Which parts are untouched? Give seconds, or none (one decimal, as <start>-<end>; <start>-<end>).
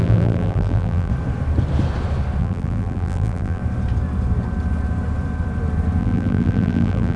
1.1-2.4; 3.6-6.0